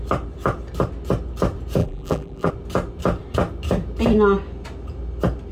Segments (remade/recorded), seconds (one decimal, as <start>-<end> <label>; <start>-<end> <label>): 0.0-1.8 recorded; 1.8-2.5 remade; 2.5-5.5 recorded